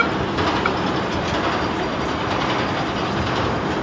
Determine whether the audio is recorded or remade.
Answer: recorded